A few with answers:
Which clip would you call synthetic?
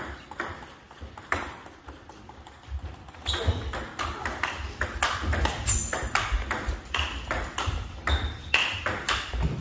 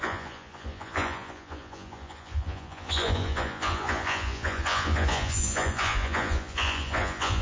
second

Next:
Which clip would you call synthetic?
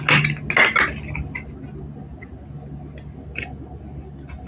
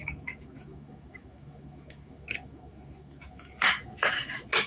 second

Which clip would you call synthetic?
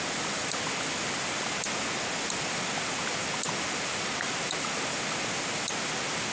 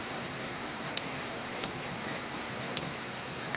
second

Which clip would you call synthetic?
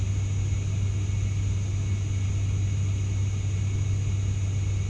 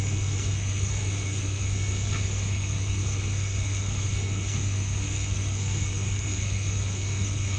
second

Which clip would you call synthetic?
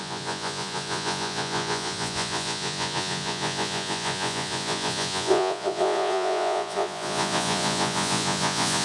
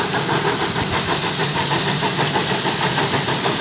first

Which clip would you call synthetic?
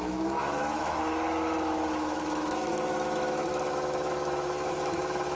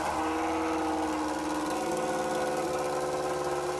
first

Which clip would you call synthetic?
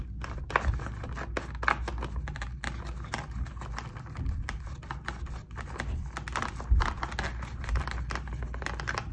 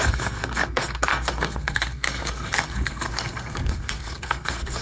second